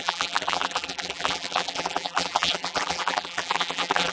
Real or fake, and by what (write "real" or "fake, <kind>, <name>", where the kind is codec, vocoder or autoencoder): fake, vocoder, BigVGAN v2